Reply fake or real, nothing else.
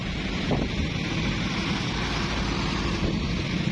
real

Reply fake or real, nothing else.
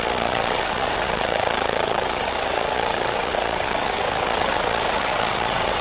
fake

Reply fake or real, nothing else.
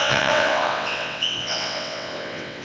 fake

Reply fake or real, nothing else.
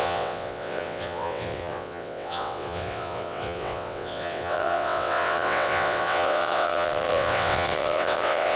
fake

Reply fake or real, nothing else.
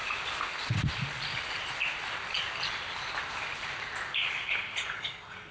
real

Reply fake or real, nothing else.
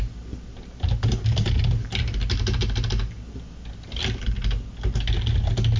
real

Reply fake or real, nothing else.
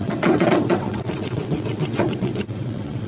fake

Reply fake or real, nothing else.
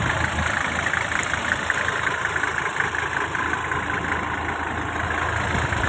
real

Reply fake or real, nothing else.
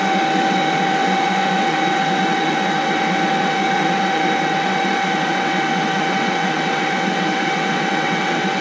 fake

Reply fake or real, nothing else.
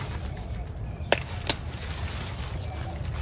real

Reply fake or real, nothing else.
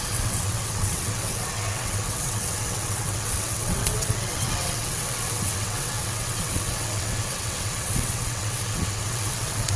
fake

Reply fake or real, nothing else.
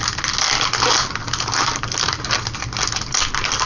real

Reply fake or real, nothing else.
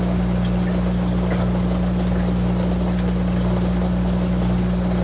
real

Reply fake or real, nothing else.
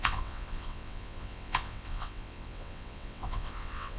fake